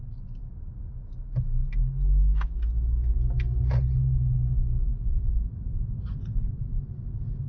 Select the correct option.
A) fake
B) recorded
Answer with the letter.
B